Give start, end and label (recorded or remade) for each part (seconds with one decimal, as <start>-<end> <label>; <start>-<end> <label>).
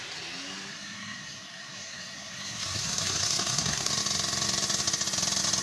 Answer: 0.0-0.7 recorded; 0.7-3.9 remade; 3.9-5.6 recorded